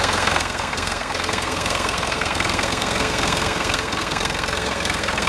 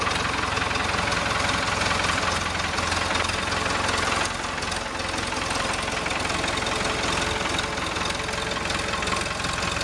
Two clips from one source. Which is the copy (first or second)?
first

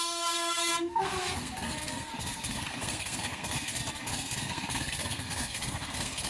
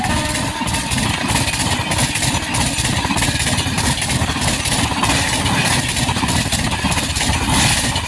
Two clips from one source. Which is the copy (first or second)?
first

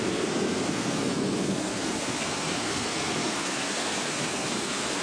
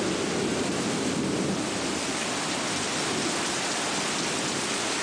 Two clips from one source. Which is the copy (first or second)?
first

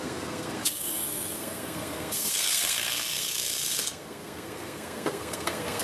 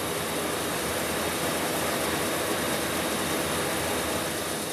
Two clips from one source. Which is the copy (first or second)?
first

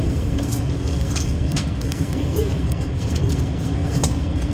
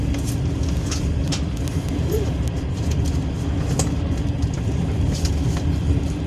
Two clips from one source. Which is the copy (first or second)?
first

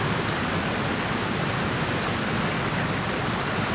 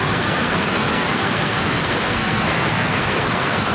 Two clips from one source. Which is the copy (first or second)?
second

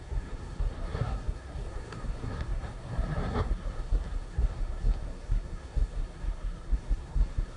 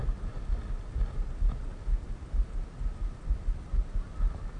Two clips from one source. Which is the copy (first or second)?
first